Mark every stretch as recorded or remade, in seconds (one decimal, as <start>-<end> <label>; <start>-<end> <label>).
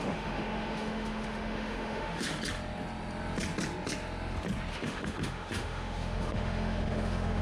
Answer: 0.0-2.3 remade; 2.3-4.7 recorded; 4.7-7.4 remade